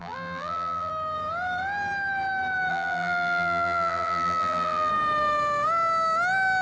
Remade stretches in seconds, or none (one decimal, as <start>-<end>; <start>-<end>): 0.0-0.9; 2.7-4.9